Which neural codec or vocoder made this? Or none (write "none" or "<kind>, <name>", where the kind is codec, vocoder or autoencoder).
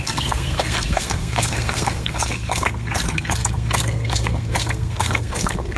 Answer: codec, SNAC